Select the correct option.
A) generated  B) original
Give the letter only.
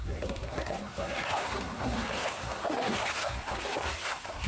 A